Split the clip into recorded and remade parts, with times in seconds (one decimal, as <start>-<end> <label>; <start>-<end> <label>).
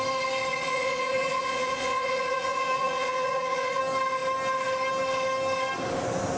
0.0-0.5 recorded; 0.5-3.8 remade; 3.8-6.4 recorded